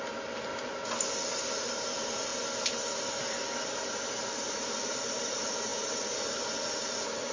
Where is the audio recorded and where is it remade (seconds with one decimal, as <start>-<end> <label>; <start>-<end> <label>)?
0.0-7.3 recorded